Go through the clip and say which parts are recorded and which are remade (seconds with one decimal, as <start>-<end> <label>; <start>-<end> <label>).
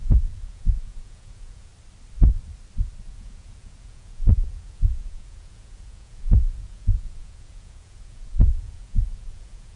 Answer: 0.0-1.7 remade; 1.7-3.0 recorded; 3.0-9.8 remade